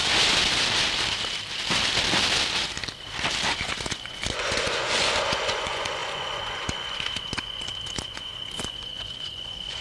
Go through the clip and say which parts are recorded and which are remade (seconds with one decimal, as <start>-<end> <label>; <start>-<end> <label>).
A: 0.0-3.5 recorded; 3.5-9.8 remade